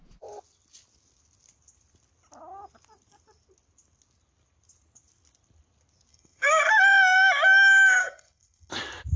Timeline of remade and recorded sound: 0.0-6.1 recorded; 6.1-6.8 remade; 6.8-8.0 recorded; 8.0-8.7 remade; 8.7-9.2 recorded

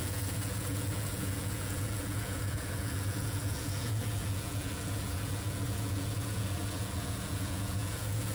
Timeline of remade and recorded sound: 0.0-8.3 remade

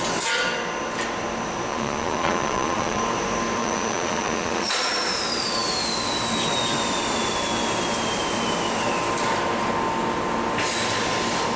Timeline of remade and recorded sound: 0.0-1.7 recorded; 1.7-3.0 remade; 3.0-3.6 recorded; 3.6-4.9 remade; 4.9-11.6 recorded

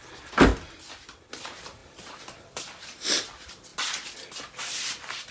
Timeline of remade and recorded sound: 0.0-0.5 recorded; 0.5-1.3 remade; 1.3-1.8 recorded; 1.8-3.2 remade; 3.2-5.3 recorded

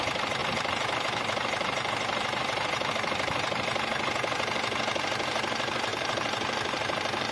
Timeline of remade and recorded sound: 0.0-0.4 recorded; 0.4-2.9 remade; 2.9-5.9 recorded; 5.9-7.3 remade